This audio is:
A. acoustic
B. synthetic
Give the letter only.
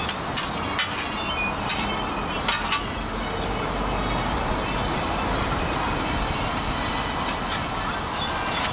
A